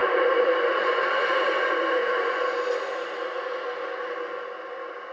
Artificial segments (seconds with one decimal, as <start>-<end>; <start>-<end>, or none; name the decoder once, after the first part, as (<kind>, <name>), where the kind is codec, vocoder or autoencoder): 0.0-2.4 (vocoder, Vocos)